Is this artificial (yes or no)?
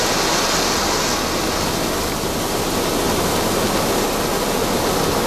no